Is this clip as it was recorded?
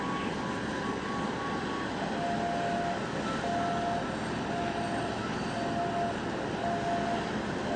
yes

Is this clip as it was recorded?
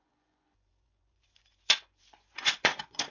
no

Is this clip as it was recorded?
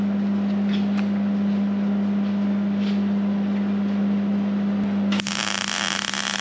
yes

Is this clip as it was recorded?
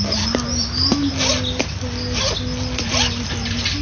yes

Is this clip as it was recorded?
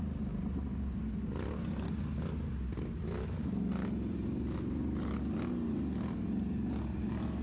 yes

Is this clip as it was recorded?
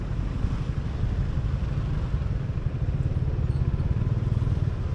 yes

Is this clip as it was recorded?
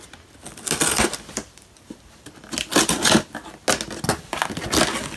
yes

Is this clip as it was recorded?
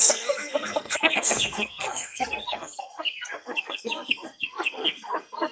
no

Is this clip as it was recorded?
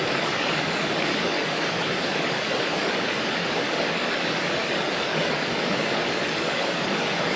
no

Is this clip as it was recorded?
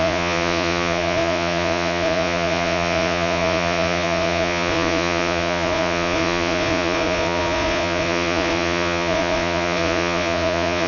no